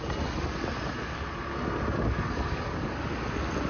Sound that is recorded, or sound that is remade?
recorded